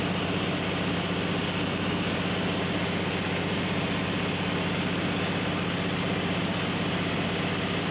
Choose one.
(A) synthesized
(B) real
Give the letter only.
B